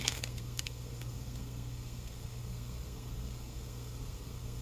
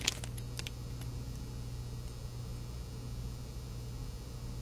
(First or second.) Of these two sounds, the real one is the second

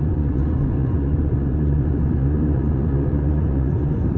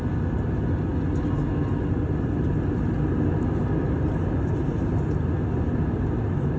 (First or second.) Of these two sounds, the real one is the second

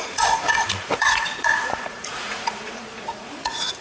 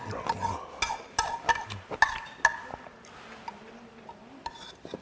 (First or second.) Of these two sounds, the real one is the second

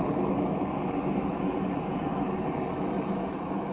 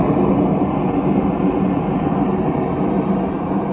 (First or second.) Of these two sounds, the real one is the second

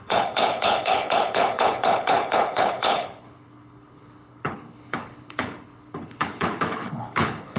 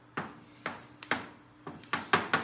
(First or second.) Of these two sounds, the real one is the second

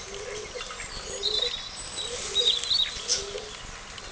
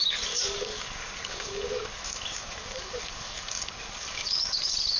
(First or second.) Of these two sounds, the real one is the first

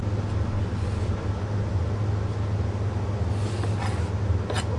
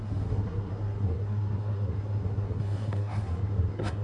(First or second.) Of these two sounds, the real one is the first